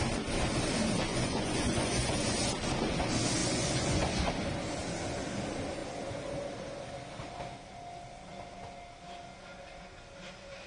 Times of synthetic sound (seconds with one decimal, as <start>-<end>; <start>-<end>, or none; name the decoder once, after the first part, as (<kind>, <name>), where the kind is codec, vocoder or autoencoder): 1.1-2.5 (vocoder, Vocos); 3.4-4.3

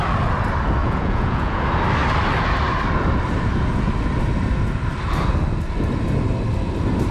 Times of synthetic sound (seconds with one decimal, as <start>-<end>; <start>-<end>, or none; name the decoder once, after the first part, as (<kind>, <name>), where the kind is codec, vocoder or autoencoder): 0.8-1.6 (vocoder, Vocos)

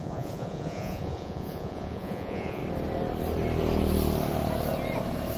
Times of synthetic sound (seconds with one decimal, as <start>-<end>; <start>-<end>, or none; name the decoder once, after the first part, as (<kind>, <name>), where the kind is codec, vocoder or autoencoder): 0.0-2.6 (vocoder, Vocos)

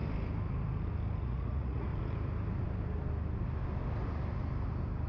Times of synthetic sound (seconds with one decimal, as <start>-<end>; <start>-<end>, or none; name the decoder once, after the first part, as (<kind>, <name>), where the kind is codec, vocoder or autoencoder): 1.2-1.9 (vocoder, Vocos)

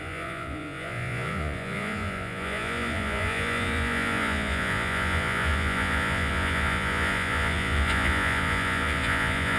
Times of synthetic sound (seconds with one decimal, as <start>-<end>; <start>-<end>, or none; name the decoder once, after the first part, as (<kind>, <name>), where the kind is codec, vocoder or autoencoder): 0.0-9.6 (vocoder, Vocos)

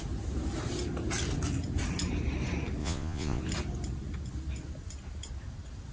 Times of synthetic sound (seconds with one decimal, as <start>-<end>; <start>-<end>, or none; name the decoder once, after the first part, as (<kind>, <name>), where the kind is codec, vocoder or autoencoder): 2.8-3.4 (vocoder, Vocos)

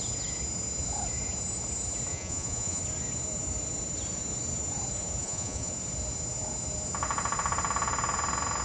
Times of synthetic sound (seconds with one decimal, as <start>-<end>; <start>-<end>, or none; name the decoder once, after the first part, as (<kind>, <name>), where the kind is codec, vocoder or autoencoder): 2.1-2.8 (vocoder, Vocos); 5.2-5.7

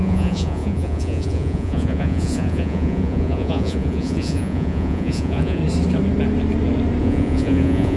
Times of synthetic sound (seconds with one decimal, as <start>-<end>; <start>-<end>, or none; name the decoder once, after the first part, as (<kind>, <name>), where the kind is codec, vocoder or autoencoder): 0.0-5.6 (vocoder, Vocos); 7.0-8.0